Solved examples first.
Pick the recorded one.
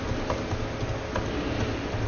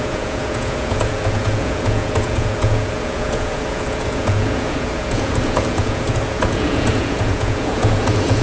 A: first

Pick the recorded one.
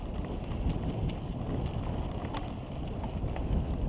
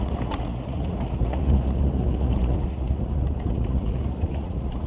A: first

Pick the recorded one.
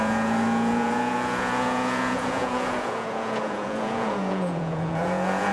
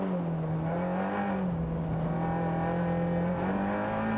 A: second